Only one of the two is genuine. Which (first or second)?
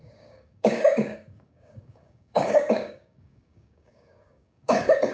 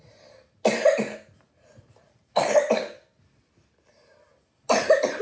second